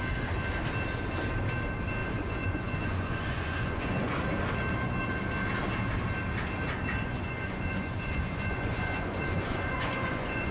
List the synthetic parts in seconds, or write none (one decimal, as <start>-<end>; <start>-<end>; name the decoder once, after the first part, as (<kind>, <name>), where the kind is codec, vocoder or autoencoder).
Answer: 2.0-4.2 (vocoder, Vocos); 7.0-10.5